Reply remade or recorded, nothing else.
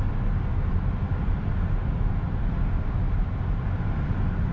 recorded